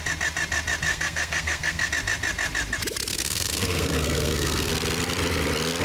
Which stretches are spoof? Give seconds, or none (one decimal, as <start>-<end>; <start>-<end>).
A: 0.9-1.9; 3.1-4.7